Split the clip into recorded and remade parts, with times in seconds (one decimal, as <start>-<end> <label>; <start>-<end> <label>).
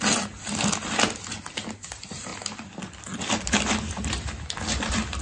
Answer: 0.0-2.3 remade; 2.3-3.5 recorded; 3.5-5.2 remade